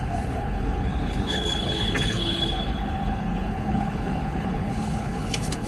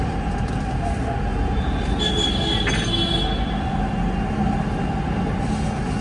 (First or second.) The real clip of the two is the second